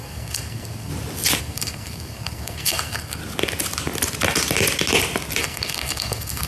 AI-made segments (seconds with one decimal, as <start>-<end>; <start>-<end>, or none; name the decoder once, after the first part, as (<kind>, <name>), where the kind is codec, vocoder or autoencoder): 0.0-0.9 (codec, SNAC); 1.4-3.2; 5.4-6.5